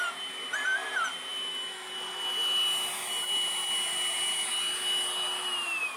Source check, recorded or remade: recorded